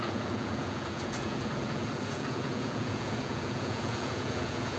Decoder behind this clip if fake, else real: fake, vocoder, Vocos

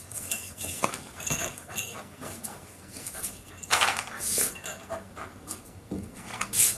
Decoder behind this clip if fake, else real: fake, codec, SNAC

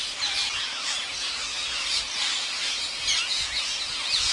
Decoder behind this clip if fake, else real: real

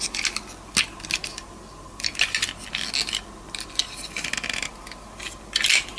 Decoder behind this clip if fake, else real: real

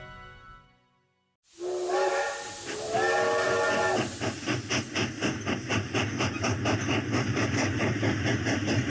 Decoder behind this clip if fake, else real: real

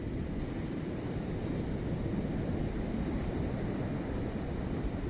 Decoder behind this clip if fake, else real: real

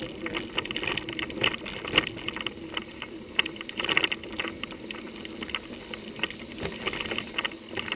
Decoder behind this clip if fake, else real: real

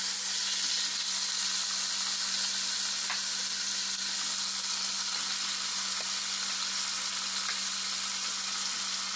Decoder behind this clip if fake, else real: real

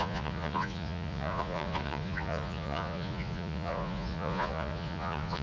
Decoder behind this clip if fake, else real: fake, vocoder, Vocos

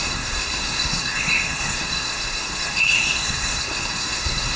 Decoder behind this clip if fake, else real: fake, codec, SNAC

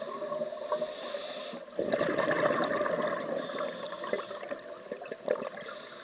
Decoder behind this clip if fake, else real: real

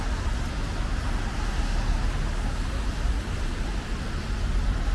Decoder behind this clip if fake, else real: real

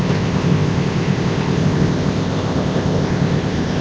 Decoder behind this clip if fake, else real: fake, codec, ZipCodec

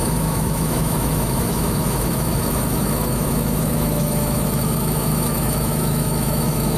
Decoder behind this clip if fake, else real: fake, autoencoder, DAC-VAE